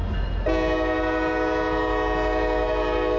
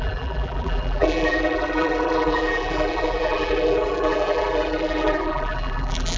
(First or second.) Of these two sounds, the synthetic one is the second